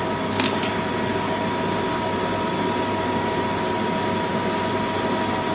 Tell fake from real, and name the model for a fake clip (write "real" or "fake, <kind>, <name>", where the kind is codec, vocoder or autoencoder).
real